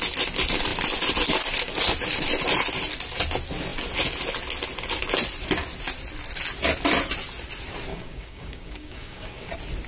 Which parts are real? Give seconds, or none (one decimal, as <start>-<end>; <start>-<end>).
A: 0.0-7.9; 9.5-9.9